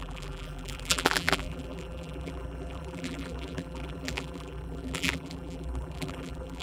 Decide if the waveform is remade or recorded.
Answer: remade